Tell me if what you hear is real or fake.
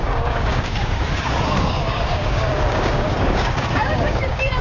fake